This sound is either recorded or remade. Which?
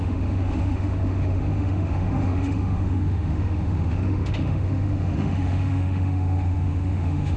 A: remade